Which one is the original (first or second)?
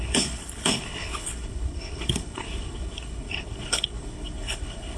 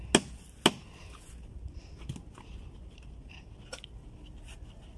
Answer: second